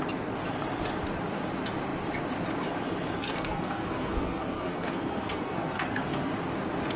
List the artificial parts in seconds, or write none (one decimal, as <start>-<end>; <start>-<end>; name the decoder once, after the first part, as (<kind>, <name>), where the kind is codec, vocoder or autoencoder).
3.2-6.3 (codec, SNAC)